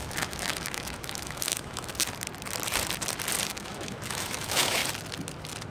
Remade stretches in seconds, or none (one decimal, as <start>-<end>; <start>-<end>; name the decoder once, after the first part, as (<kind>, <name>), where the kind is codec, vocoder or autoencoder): 0.0-1.9 (autoencoder, DAC-VAE); 3.5-4.8